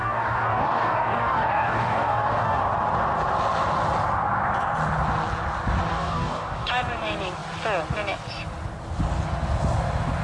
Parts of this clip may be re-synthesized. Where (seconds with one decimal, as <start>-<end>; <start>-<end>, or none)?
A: 0.0-2.6; 5.9-6.7